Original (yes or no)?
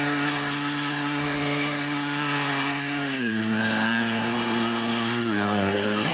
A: no